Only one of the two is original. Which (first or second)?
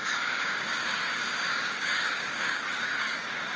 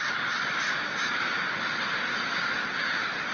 second